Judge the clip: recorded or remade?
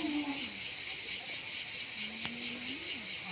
recorded